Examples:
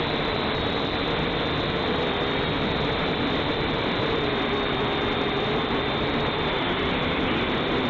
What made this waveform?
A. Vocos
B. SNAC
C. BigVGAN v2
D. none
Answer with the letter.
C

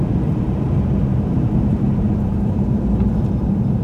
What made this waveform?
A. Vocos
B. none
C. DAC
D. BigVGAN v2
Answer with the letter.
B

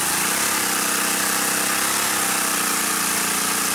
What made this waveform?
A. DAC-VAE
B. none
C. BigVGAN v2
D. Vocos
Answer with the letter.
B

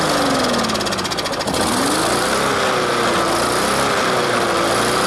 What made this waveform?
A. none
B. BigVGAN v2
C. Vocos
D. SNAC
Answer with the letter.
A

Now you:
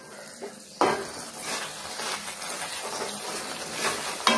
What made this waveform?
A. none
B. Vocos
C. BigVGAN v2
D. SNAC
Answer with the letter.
A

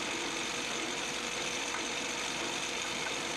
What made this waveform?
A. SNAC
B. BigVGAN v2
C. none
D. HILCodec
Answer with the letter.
C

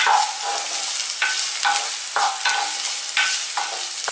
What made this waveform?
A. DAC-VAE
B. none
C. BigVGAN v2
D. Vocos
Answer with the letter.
B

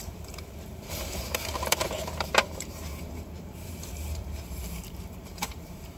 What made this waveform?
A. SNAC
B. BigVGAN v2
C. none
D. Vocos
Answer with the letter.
B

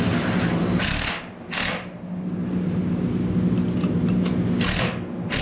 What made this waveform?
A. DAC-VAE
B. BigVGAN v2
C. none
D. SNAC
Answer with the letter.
C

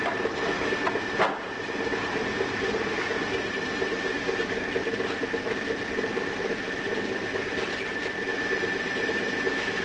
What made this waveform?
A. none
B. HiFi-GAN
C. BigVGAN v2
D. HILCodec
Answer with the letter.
A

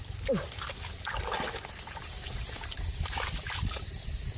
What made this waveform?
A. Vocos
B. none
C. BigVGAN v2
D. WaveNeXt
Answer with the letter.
B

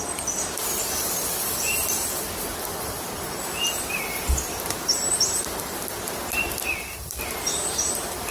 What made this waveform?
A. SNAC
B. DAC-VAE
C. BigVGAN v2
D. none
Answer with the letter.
C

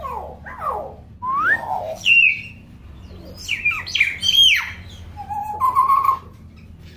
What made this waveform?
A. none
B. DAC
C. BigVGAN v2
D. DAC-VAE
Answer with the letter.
A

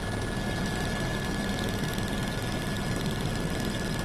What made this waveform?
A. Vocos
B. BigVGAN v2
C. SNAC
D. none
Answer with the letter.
D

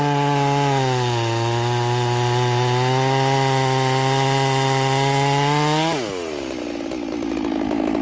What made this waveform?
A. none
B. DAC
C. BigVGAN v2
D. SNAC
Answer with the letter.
A